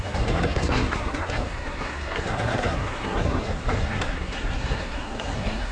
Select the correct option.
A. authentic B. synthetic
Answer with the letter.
B